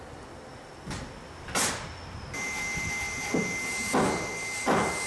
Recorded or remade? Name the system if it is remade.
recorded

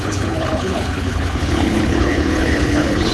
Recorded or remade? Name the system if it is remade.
remade, codec, HILCodec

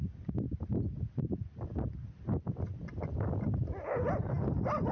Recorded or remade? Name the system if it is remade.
recorded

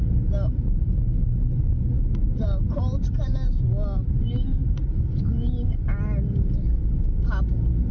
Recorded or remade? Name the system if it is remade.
recorded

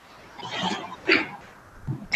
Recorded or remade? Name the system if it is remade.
remade, vocoder, BigVGAN v2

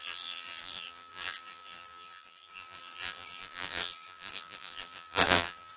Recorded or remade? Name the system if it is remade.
remade, vocoder, BigVGAN v2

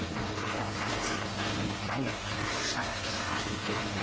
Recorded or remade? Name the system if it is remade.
remade, codec, SNAC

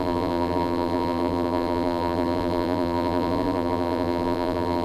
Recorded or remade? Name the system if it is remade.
remade, vocoder, BigVGAN v2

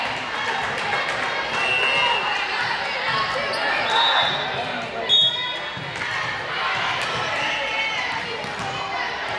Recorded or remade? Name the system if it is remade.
recorded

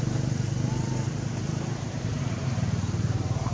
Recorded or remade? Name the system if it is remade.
remade, vocoder, BigVGAN v2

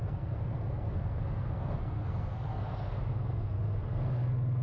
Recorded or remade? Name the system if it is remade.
remade, codec, SNAC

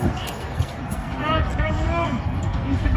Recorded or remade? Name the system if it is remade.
remade, codec, SNAC